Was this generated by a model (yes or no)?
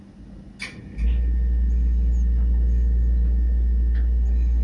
no